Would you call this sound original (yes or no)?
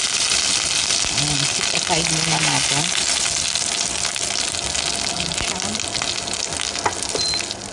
yes